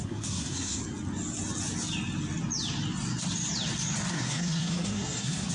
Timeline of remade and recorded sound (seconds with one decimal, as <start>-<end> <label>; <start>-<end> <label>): 0.0-0.8 remade; 0.8-4.1 recorded; 4.1-5.5 remade